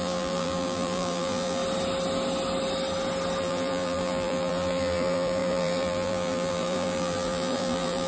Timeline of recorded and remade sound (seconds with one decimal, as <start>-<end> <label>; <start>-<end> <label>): 0.0-1.6 remade; 1.6-3.4 recorded; 3.4-8.1 remade